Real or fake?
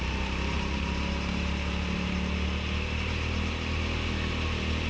real